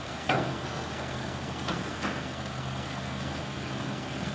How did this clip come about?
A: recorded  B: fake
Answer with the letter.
B